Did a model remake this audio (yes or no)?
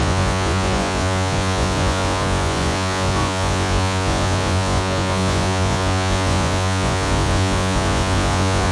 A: yes